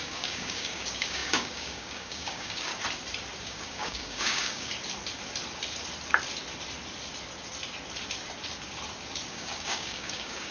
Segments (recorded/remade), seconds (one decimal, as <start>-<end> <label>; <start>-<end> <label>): 0.0-2.7 remade; 2.7-3.4 recorded; 3.4-4.7 remade; 4.7-9.3 recorded; 9.3-10.5 remade